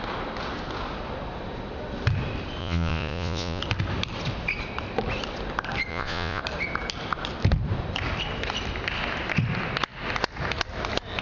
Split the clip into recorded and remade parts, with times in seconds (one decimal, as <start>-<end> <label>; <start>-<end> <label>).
0.0-2.6 recorded; 2.6-3.6 remade; 3.6-5.9 recorded; 5.9-6.4 remade; 6.4-11.2 recorded